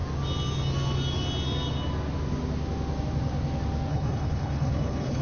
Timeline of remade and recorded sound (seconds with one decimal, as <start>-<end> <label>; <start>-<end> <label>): 0.0-3.9 recorded; 3.9-5.2 remade